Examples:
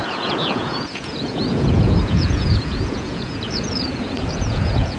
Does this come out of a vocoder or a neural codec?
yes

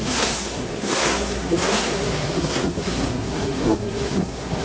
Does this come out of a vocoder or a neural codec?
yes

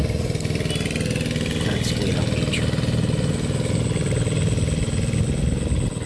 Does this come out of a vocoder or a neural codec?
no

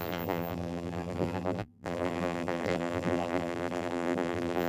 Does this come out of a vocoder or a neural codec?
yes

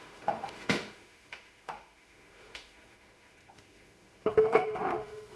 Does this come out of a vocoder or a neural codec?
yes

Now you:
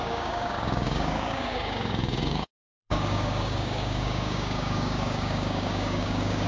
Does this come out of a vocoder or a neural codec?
yes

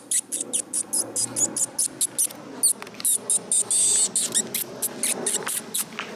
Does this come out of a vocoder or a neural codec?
no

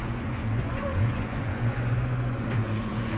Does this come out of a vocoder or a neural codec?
yes